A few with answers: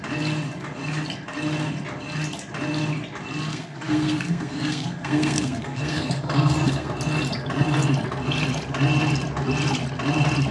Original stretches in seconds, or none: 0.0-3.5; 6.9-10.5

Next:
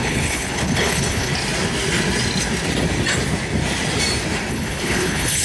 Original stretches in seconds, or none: 1.3-4.5

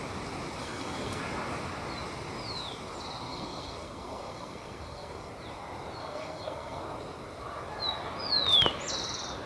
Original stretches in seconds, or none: 0.0-0.6; 1.2-3.3; 5.3-6.0; 6.8-9.5

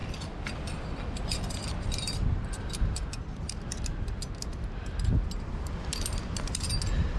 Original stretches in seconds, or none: 0.0-7.2

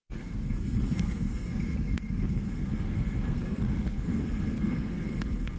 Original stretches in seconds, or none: 1.5-2.3

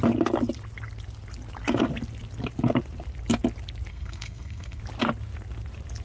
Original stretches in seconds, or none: 0.0-3.9; 4.8-6.0